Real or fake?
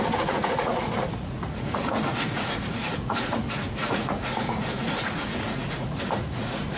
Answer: fake